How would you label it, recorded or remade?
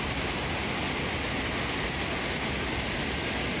recorded